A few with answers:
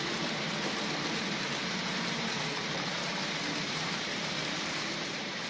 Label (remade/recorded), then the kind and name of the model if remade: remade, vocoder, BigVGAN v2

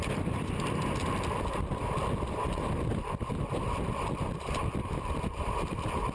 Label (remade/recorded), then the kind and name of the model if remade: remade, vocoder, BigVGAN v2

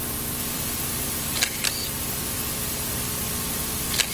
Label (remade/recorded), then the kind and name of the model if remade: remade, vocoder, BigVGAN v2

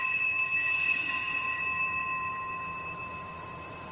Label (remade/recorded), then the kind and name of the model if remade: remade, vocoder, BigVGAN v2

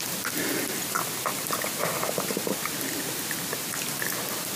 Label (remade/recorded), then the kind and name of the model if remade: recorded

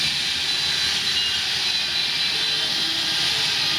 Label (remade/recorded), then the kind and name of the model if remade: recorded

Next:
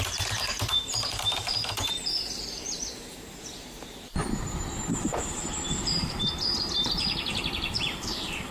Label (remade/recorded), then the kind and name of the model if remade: remade, vocoder, BigVGAN v2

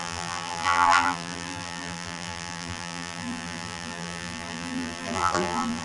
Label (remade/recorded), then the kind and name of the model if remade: remade, vocoder, BigVGAN v2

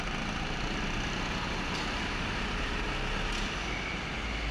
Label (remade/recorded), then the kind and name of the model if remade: recorded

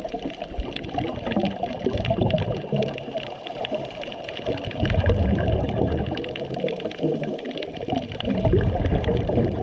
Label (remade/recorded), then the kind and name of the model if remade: remade, vocoder, BigVGAN v2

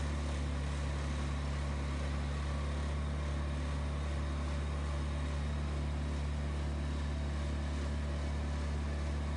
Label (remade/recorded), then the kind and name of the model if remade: recorded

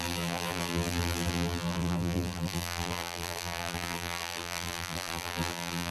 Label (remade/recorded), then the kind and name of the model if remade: remade, vocoder, BigVGAN v2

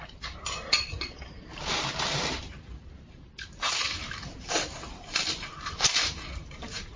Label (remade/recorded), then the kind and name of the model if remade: remade, vocoder, BigVGAN v2